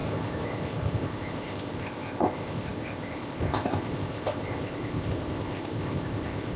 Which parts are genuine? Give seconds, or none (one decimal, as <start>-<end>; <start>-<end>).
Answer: none